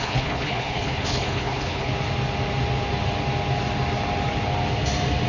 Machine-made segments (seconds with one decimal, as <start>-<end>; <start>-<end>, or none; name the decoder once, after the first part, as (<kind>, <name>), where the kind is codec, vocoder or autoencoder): 0.0-1.9 (codec, HILCodec)